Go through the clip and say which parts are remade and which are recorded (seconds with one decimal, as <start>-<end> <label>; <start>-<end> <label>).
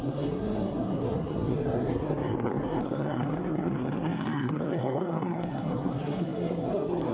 0.0-7.1 remade